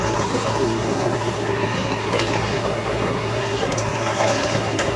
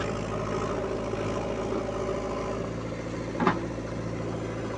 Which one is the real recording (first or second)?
second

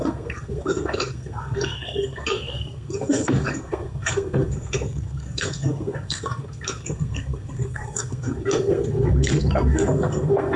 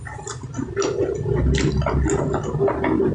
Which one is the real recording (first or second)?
second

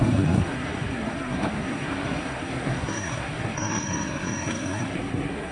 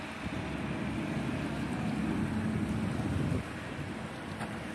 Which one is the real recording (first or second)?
second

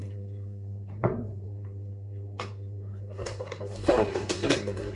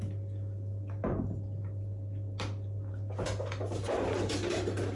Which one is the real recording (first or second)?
second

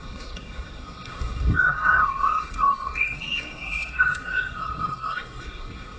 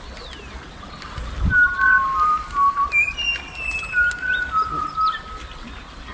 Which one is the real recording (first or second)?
second